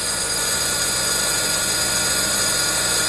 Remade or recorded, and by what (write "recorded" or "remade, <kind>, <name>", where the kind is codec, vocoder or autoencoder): remade, vocoder, Vocos